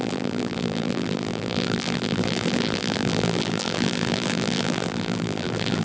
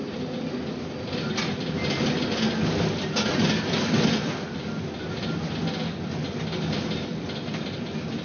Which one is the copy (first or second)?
first